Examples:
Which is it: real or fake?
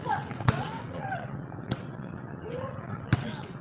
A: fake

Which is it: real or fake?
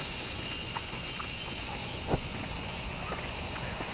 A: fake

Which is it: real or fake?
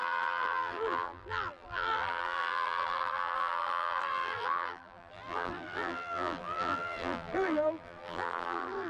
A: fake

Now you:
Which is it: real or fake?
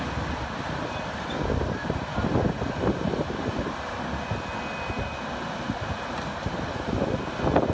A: real